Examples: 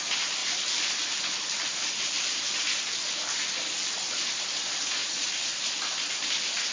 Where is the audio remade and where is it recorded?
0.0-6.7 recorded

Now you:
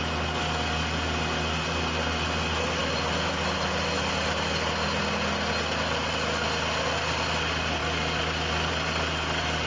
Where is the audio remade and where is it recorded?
0.0-9.7 recorded

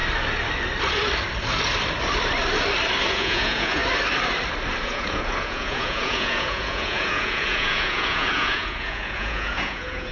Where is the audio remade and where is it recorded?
0.0-3.1 recorded; 3.1-3.8 remade; 3.8-4.8 recorded; 4.8-10.1 remade

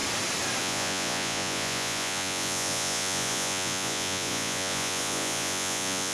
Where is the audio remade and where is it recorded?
0.0-0.6 recorded; 0.6-6.1 remade

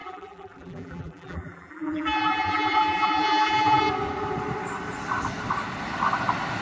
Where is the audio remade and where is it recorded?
0.0-3.8 remade; 3.8-6.6 recorded

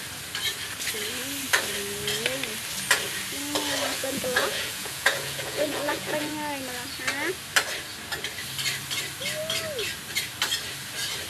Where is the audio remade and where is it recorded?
0.0-4.0 recorded; 4.0-6.3 remade; 6.3-11.3 recorded